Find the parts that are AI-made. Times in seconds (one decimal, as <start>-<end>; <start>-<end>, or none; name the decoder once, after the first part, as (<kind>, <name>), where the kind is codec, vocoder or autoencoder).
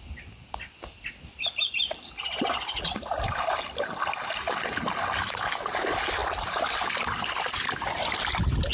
none